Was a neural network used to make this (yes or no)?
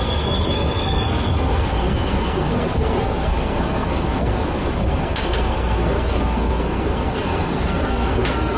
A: yes